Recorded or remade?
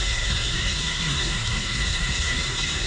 remade